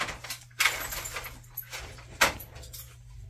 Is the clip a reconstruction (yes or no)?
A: no